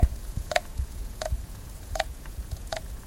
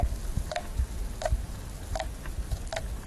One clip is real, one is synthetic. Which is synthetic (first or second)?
first